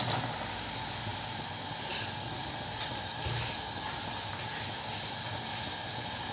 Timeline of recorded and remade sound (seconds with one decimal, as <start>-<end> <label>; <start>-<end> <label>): 0.0-6.3 recorded